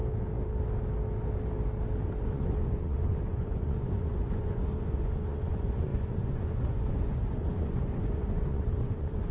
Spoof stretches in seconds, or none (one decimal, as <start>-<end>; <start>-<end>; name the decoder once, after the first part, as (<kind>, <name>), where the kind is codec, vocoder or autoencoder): 2.2-9.3 (vocoder, Vocos)